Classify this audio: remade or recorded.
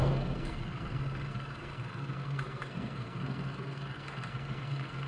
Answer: remade